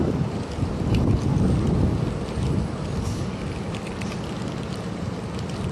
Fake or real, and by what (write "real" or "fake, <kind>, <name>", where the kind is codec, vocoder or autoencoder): real